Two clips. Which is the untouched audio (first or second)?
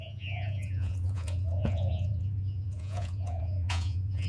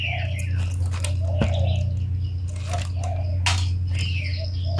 second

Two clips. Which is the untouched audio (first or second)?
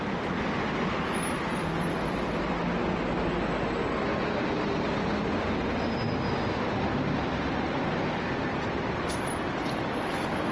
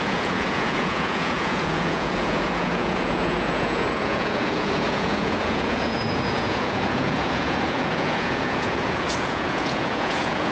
first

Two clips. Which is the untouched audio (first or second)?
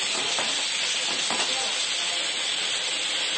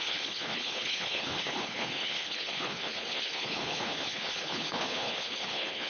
first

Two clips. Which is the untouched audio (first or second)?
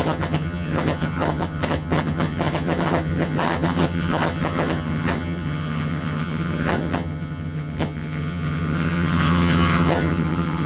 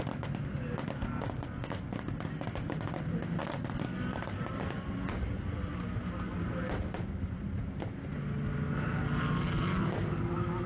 second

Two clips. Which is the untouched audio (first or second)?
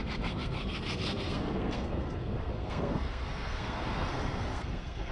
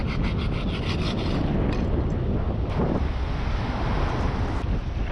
second